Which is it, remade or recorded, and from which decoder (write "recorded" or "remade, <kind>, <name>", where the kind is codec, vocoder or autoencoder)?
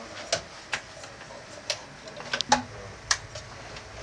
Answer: recorded